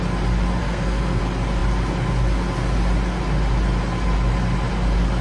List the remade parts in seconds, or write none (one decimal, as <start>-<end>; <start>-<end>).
0.6-1.2

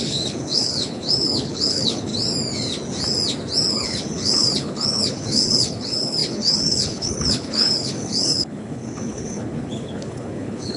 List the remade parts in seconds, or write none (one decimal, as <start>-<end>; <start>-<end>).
0.0-2.1; 3.7-10.8

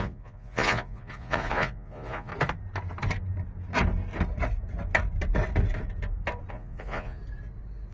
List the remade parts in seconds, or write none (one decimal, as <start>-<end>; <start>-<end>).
0.0-2.3; 6.5-7.2